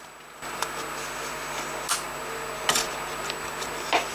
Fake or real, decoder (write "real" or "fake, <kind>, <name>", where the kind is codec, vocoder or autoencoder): real